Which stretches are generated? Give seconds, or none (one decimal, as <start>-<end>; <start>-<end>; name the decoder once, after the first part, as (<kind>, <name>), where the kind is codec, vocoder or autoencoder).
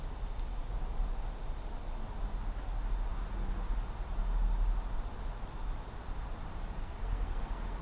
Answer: 6.8-7.8 (codec, SNAC)